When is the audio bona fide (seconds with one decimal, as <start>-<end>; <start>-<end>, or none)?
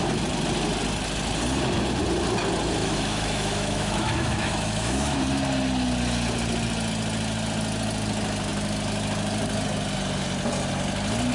0.0-2.8; 5.2-11.3